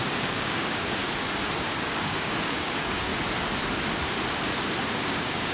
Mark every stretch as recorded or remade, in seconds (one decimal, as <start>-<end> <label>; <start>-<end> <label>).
0.0-1.0 remade; 1.0-1.6 recorded; 1.6-3.1 remade; 3.1-4.9 recorded; 4.9-5.5 remade